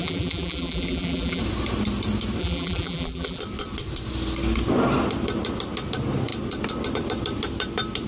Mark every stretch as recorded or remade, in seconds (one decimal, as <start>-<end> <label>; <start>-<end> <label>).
0.0-1.4 remade; 1.4-2.4 recorded; 2.4-3.4 remade; 3.4-8.1 recorded